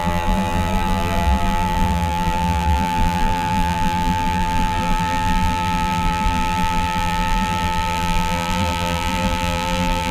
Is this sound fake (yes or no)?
yes